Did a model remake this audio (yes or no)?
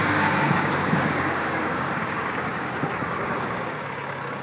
yes